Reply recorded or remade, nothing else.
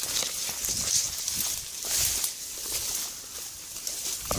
recorded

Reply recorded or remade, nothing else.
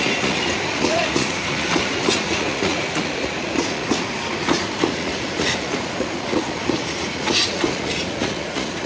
remade